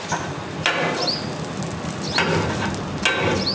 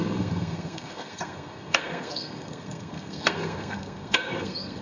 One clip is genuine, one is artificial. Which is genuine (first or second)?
first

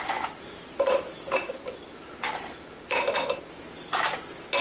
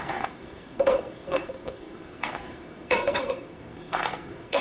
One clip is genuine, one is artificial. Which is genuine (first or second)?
first